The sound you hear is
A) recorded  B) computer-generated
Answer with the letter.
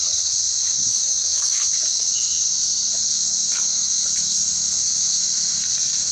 B